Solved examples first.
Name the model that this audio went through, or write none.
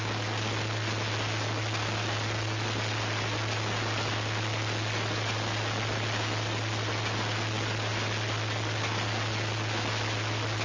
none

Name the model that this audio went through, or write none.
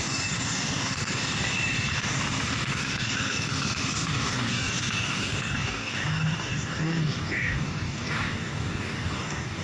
codec, DAC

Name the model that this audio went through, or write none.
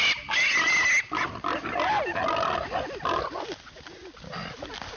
none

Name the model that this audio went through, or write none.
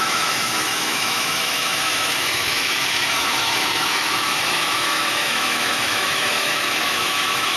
autoencoder, DAC-VAE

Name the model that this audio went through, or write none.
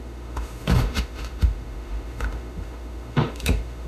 autoencoder, DAC-VAE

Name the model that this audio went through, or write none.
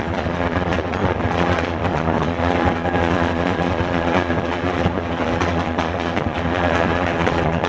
vocoder, Vocos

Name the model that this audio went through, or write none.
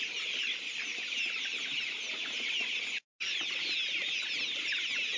none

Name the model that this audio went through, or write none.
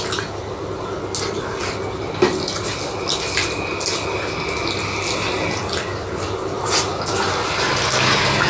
none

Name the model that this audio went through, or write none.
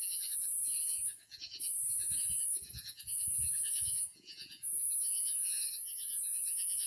vocoder, Vocos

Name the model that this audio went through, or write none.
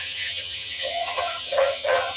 vocoder, HiFi-GAN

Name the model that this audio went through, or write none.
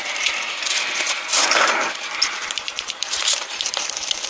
vocoder, BigVGAN v2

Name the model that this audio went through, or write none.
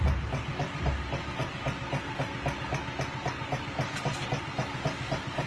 none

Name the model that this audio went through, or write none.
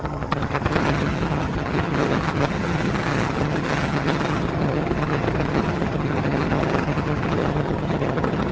vocoder, HiFi-GAN